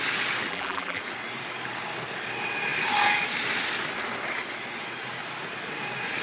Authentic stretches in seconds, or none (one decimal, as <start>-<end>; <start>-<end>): 0.0-0.5; 1.0-6.2